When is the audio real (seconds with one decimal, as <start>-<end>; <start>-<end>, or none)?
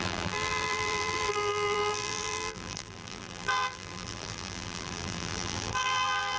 none